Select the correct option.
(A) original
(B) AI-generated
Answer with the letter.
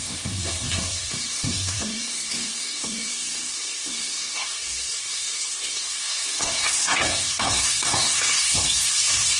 B